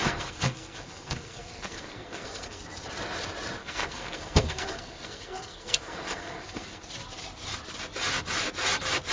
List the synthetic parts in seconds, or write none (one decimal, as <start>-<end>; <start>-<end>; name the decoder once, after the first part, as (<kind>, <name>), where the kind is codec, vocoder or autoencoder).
0.0-2.6 (codec, SNAC); 3.6-6.9